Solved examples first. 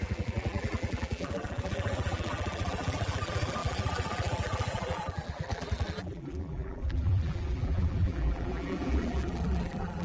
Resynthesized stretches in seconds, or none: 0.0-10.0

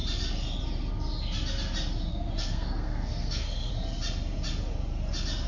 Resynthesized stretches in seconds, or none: 2.1-3.7

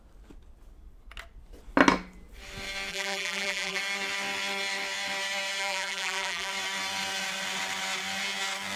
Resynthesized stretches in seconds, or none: 2.9-3.8; 5.6-6.5

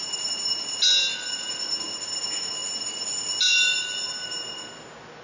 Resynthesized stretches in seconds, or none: none

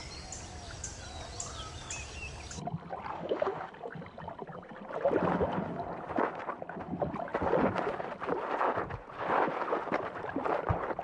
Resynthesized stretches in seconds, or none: 3.1-3.7

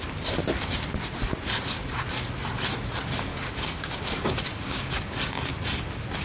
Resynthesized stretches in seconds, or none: 3.3-4.1; 4.5-5.0

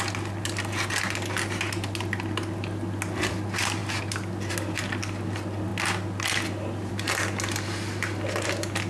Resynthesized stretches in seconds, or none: none

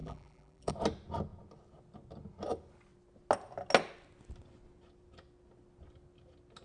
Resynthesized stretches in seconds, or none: 0.0-0.7